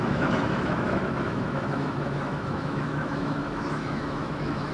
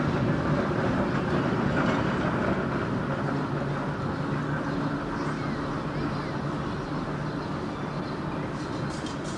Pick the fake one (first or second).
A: first